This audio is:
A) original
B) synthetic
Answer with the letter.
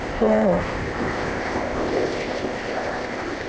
B